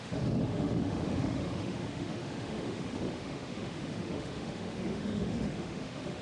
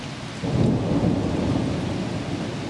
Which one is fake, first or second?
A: first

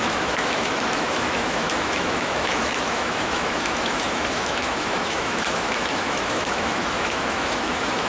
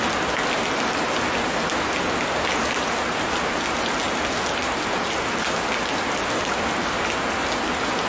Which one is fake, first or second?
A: first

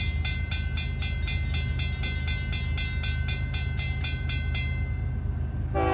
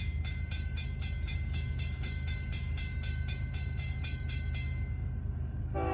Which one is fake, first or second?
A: second